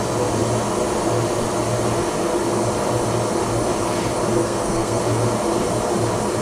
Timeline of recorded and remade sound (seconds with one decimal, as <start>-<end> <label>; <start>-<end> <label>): 0.0-4.4 recorded; 4.4-5.0 remade; 5.0-6.4 recorded